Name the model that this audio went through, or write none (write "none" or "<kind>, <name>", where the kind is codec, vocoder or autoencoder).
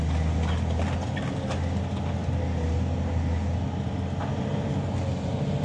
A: none